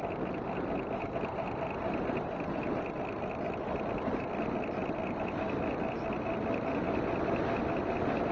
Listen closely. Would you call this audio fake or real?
real